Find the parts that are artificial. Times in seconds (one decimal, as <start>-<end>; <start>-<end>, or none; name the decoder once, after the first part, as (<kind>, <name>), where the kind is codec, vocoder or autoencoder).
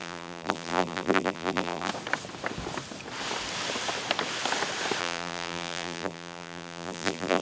0.0-1.9 (vocoder, BigVGAN v2); 5.0-7.4